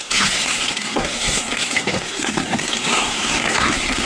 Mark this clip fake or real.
fake